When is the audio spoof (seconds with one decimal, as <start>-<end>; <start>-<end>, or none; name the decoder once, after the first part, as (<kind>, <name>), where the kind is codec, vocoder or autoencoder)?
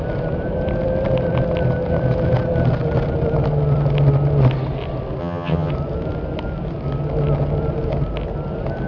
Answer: 5.2-5.7 (vocoder, HiFi-GAN)